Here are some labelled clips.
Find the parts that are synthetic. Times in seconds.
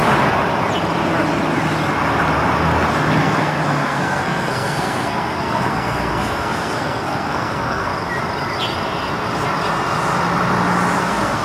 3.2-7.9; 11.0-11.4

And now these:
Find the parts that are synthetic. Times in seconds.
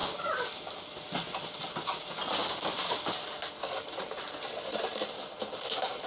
none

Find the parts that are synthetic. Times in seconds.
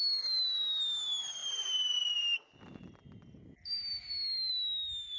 none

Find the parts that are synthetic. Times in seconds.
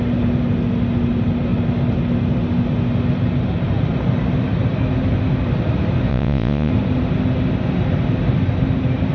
6.1-6.7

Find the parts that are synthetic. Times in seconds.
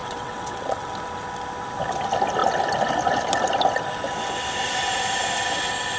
0.0-0.9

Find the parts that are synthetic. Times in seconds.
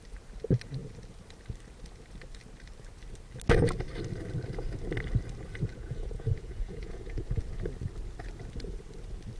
5.7-7.4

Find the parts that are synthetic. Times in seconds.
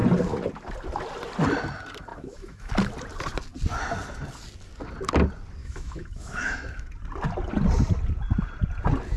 2.1-2.7; 5.6-6.9